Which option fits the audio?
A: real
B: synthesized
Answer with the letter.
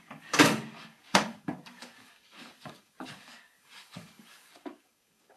B